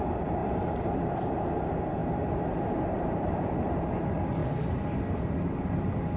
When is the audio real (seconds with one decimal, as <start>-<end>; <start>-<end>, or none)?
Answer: 0.0-0.4; 1.1-2.0; 3.4-6.2